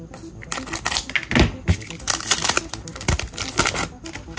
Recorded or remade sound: recorded